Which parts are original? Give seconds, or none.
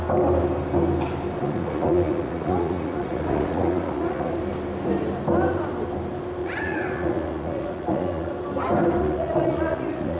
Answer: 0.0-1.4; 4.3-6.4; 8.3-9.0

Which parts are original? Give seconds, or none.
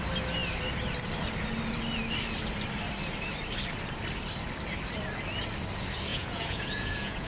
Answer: 0.0-6.1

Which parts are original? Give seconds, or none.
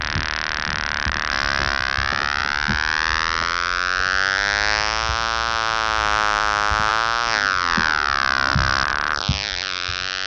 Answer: 0.0-10.3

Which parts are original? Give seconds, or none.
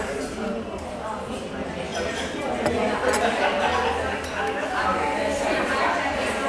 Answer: 0.0-6.5